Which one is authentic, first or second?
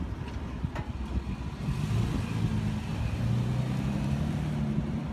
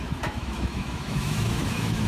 first